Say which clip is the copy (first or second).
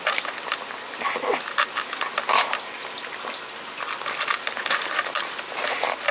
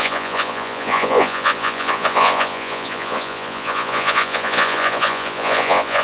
second